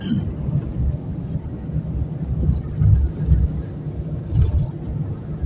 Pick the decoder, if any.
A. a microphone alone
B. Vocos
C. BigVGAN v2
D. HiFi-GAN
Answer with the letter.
A